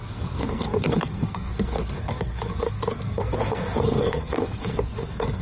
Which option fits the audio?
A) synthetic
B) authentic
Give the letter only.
A